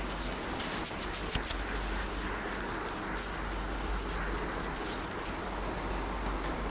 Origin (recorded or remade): recorded